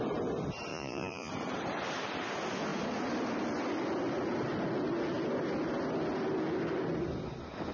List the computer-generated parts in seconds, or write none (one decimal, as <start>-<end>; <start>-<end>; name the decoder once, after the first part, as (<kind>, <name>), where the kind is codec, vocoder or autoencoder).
0.7-1.3 (vocoder, Vocos)